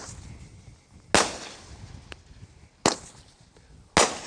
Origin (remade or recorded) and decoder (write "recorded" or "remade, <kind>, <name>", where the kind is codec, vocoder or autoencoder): recorded